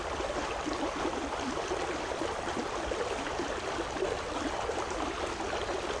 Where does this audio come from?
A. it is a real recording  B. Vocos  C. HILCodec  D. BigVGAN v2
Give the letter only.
A